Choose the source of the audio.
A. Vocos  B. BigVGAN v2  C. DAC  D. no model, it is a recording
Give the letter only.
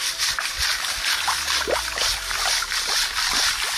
D